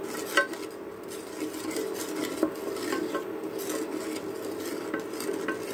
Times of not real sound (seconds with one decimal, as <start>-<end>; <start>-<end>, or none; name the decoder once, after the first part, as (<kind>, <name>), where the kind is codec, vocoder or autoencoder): none